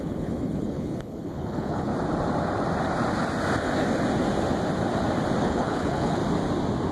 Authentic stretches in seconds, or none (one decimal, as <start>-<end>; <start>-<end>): 1.9-5.4; 6.2-6.9